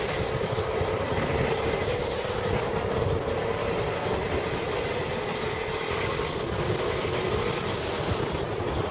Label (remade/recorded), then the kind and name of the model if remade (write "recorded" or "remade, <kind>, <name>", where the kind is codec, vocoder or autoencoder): remade, vocoder, BigVGAN v2